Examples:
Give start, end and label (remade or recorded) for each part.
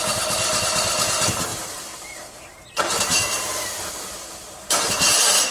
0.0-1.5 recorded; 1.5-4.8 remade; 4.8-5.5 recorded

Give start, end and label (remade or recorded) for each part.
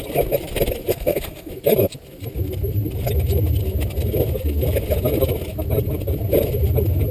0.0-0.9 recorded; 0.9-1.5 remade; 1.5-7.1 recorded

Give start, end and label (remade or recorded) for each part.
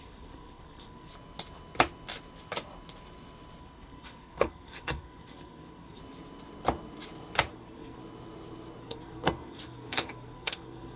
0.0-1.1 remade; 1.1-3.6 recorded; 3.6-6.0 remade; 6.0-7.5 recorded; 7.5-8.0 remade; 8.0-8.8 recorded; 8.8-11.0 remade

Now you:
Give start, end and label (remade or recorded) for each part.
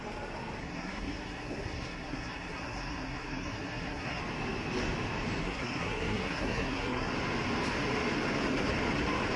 0.0-0.6 recorded; 0.6-4.2 remade; 4.2-5.4 recorded; 5.4-7.1 remade; 7.1-9.4 recorded